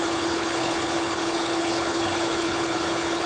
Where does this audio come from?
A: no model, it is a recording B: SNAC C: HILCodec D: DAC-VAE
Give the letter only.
C